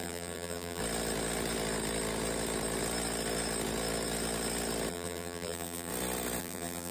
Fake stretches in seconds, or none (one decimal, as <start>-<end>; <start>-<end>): 0.0-0.8; 4.9-5.9; 6.4-6.9